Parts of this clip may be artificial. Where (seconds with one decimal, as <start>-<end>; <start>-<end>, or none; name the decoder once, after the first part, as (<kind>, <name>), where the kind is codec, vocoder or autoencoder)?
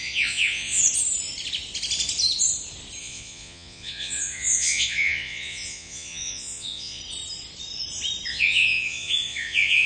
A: 0.0-0.8 (vocoder, Vocos); 3.0-7.0; 8.3-9.9